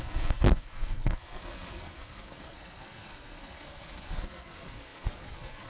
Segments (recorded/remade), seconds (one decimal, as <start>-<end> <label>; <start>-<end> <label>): 0.0-5.7 remade